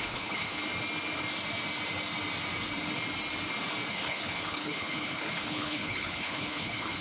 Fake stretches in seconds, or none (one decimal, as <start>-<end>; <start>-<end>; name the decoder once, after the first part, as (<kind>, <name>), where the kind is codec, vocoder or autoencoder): 0.0-0.6 (codec, HILCodec); 3.9-7.0